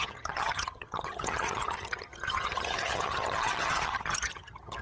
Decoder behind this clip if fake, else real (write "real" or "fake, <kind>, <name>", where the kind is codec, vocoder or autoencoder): fake, vocoder, HiFi-GAN